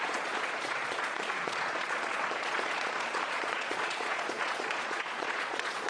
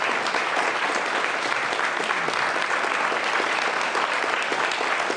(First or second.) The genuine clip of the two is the second